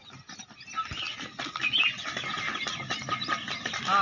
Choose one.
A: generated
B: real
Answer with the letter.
B